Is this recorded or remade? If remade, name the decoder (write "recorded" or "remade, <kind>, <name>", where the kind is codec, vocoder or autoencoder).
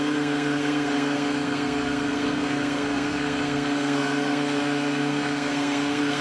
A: remade, codec, SNAC